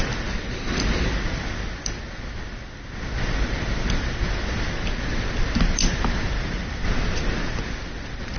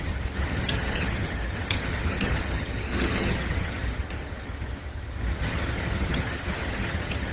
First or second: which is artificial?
second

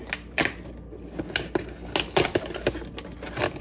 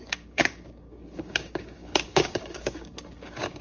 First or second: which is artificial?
second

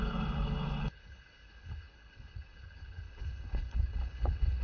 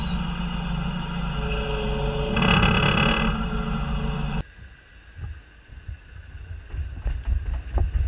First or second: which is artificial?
first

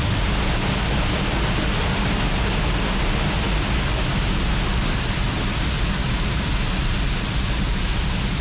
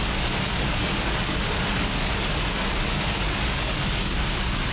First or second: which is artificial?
second